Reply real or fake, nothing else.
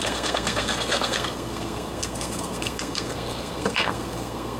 fake